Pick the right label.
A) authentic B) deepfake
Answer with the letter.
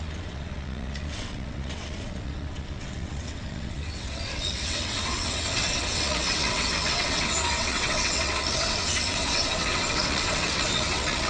B